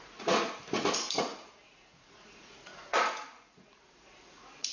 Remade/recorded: remade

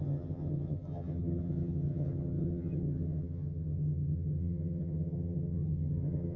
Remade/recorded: remade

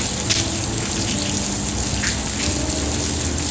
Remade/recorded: recorded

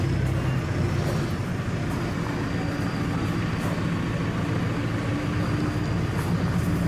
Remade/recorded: recorded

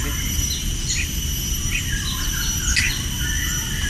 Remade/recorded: recorded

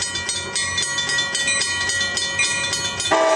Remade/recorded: recorded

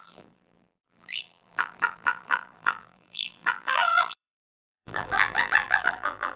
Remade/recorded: remade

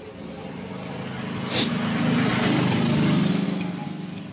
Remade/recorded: recorded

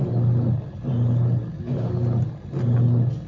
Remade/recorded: recorded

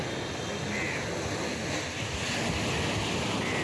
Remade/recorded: recorded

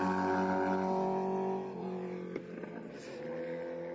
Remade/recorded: recorded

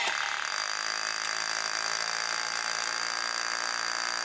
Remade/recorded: recorded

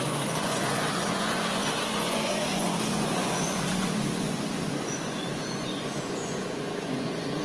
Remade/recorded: remade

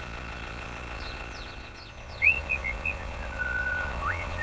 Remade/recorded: remade